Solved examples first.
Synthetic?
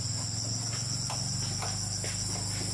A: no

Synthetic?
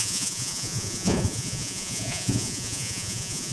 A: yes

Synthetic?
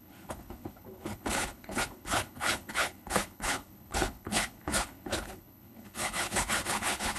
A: yes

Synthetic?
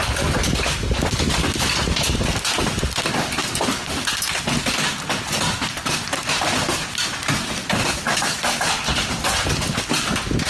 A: no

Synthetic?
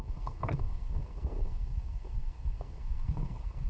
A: yes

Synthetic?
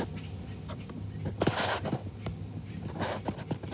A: no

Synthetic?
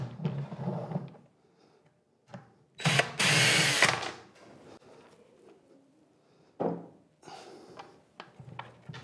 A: no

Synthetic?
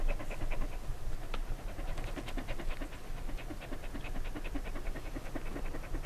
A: no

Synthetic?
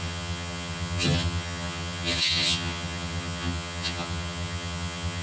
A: yes